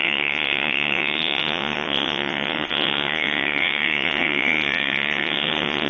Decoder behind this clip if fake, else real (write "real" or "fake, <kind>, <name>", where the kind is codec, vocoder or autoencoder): fake, vocoder, WaveNeXt